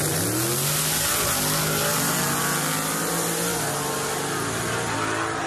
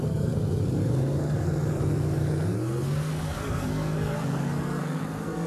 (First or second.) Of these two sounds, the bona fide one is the first